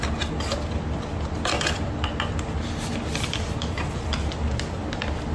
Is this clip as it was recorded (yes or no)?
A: yes